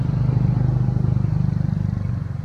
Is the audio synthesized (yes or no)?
no